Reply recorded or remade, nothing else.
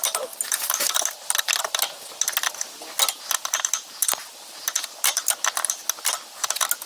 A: recorded